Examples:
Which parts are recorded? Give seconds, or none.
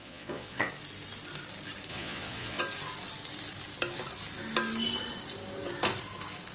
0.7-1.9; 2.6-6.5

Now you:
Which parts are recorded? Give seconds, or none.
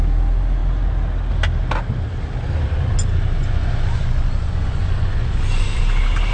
0.0-3.4; 5.8-6.3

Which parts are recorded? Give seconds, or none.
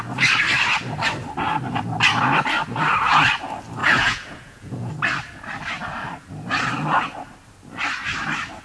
0.0-3.8; 4.9-8.6